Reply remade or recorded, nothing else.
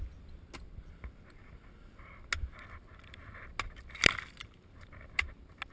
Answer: recorded